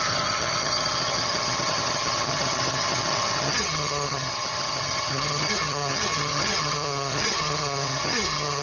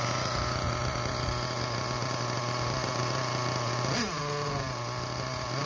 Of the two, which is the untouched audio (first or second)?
second